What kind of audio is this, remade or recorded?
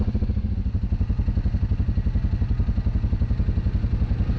recorded